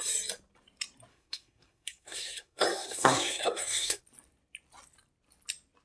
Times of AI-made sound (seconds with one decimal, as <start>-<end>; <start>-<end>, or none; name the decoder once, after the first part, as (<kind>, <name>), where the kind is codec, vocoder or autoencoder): 1.1-4.0 (codec, SNAC)